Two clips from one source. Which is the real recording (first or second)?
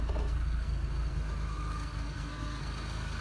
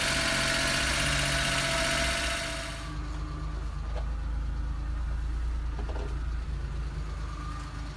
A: second